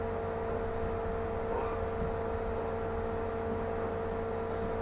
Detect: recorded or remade recorded